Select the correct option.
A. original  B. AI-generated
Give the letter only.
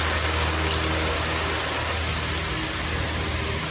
A